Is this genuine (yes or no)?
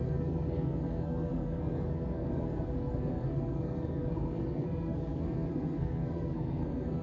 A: no